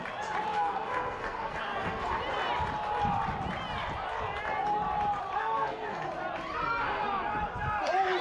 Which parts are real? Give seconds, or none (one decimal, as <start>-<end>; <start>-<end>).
0.0-0.5; 2.2-5.4; 6.1-8.2